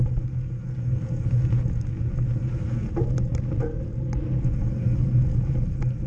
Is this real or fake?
real